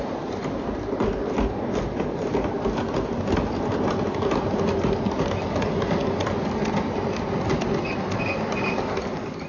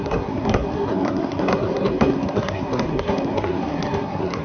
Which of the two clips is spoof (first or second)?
second